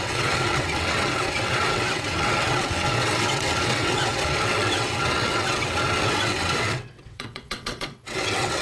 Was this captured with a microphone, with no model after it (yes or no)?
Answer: no